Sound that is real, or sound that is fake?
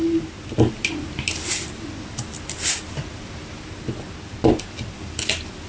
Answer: real